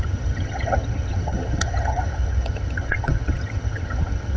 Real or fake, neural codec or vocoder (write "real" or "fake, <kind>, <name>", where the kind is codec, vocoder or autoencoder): fake, vocoder, HiFi-GAN